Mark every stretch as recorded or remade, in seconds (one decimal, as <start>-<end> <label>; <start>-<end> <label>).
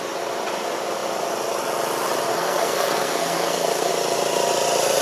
0.0-2.3 recorded; 2.3-3.9 remade; 3.9-5.0 recorded